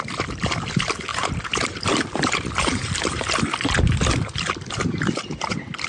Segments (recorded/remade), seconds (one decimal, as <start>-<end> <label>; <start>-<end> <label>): 0.0-1.1 recorded; 1.1-4.6 remade; 4.6-5.2 recorded; 5.2-5.9 remade